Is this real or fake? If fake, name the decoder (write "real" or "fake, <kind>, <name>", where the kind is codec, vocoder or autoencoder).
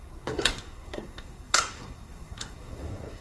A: fake, codec, SNAC